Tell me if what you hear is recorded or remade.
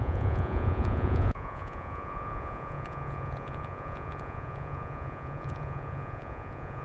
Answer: remade